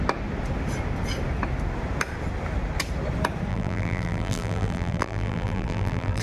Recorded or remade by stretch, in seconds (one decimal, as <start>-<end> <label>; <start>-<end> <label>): 0.0-3.5 recorded; 3.5-6.2 remade